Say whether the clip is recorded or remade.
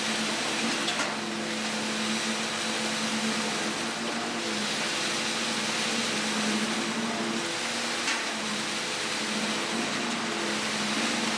recorded